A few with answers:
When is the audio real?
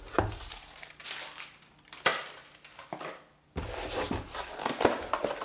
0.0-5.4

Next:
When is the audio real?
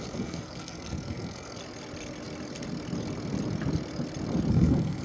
1.6-4.5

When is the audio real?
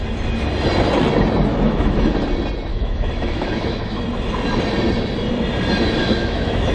0.0-1.5; 2.1-2.7; 4.0-6.0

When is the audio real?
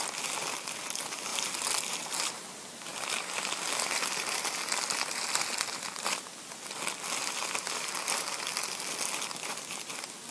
0.0-1.3; 2.3-2.9; 5.5-10.3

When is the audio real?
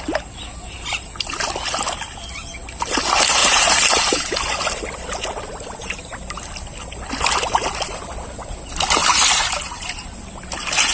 0.0-3.4; 4.3-9.0; 9.5-10.9